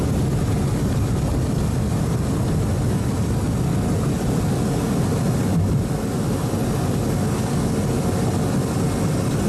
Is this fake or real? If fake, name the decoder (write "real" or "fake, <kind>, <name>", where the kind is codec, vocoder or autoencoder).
real